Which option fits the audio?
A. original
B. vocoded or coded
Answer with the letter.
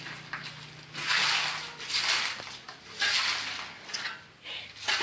A